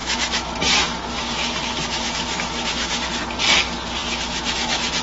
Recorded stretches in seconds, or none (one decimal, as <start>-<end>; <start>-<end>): 3.0-4.0